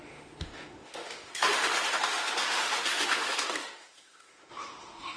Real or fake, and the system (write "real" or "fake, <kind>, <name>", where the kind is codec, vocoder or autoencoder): fake, autoencoder, DAC-VAE